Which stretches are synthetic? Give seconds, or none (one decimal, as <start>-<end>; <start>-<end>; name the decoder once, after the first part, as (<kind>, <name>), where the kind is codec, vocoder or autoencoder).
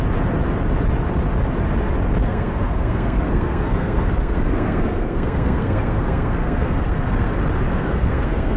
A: 2.2-7.3 (codec, SNAC); 7.7-8.6